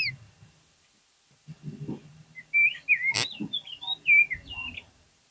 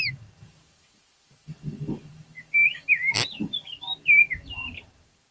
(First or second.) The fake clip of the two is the second